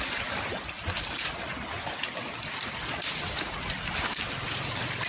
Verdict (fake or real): real